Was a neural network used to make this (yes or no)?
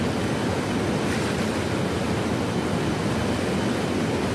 no